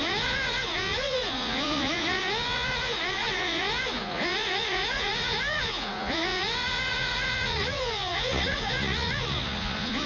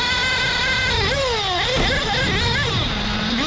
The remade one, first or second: first